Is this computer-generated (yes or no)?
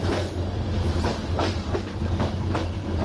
yes